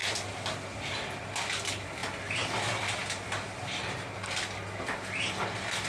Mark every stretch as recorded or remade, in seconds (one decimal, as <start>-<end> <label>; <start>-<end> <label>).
0.0-5.9 recorded